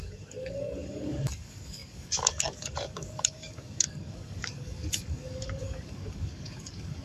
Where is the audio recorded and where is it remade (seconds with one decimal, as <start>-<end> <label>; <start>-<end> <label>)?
0.0-7.0 remade